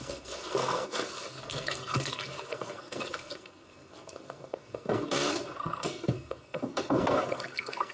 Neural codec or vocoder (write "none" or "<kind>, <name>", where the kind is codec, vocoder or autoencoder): codec, SNAC